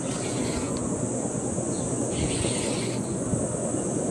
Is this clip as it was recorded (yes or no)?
no